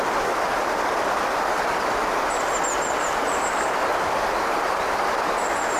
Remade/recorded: recorded